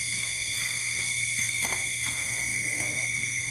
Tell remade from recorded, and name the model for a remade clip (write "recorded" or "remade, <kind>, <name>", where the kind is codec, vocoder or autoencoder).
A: remade, codec, SNAC